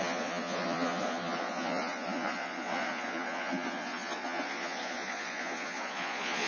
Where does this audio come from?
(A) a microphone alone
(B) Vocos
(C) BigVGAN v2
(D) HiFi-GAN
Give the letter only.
B